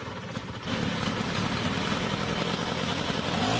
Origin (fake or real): real